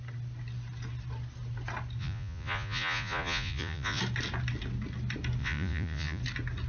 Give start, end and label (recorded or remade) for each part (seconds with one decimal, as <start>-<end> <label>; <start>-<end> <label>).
0.0-2.0 recorded; 2.0-4.0 remade; 4.0-5.4 recorded; 5.4-6.2 remade; 6.2-6.7 recorded